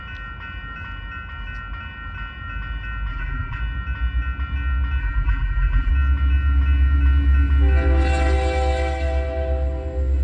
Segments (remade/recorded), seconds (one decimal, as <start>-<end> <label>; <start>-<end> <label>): 0.0-3.1 recorded; 3.1-3.6 remade; 3.6-5.0 recorded; 5.0-5.9 remade; 5.9-10.2 recorded